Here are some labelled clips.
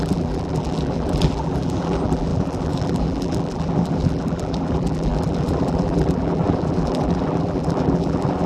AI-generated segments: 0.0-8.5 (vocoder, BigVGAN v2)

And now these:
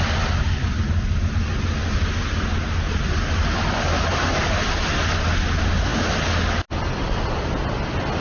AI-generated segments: none